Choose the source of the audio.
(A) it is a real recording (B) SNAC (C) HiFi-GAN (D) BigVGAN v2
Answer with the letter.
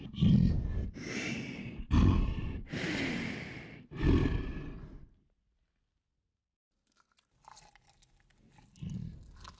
A